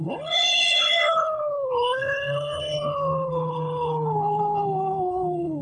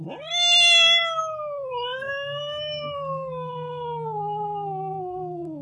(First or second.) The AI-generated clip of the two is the first